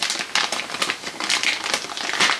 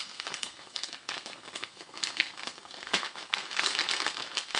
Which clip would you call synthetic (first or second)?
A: second